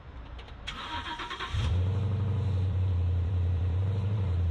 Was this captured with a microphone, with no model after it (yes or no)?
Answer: no